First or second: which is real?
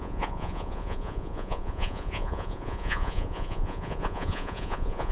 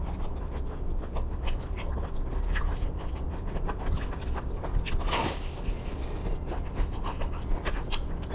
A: second